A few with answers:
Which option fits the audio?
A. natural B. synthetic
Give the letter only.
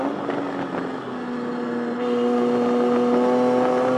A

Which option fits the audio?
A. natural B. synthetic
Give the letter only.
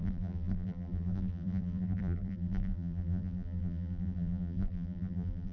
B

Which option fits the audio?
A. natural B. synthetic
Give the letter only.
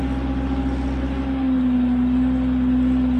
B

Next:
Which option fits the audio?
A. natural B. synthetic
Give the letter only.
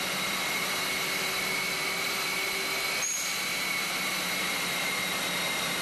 A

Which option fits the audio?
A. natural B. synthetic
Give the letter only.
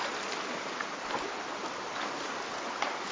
A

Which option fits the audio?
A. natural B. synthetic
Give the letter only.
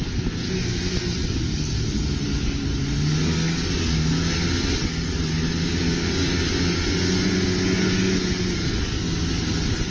A